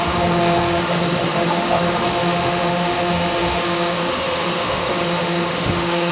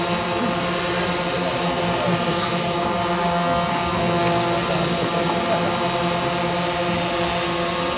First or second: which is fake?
first